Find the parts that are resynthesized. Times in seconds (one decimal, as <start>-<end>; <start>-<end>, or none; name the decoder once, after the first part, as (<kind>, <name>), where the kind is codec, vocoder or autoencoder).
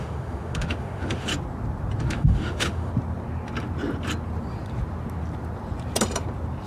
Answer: 0.0-1.3 (autoencoder, DAC-VAE); 2.0-2.9